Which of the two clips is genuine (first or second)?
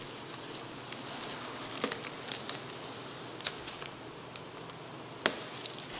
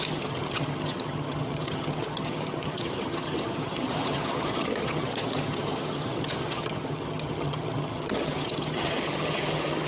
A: first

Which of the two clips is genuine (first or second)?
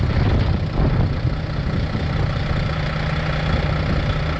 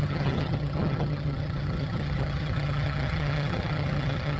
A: first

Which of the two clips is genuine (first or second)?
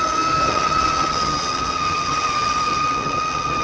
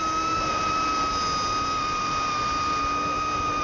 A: second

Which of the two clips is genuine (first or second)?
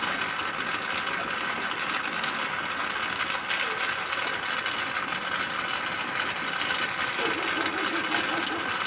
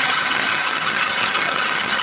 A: first